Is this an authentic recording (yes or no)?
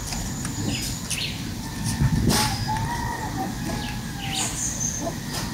yes